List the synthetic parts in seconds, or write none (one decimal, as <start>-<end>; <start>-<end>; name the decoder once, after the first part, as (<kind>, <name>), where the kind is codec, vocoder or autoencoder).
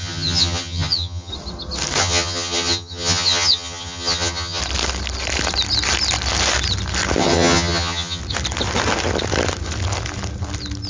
0.0-1.3 (vocoder, HiFi-GAN); 2.0-4.6; 7.2-8.2